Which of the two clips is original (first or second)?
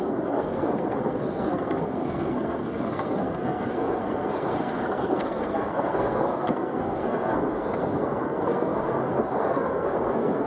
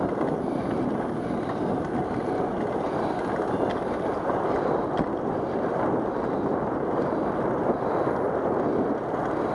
second